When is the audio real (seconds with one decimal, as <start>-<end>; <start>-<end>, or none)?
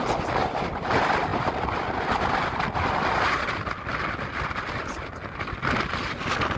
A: 0.0-6.6